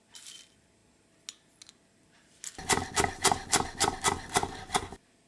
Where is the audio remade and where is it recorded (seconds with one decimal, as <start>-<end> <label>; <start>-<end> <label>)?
0.0-5.3 recorded